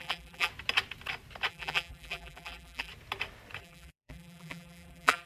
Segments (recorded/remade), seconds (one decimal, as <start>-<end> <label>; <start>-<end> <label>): 0.0-0.5 remade; 0.5-1.5 recorded; 1.5-2.9 remade; 2.9-3.6 recorded; 3.6-5.3 remade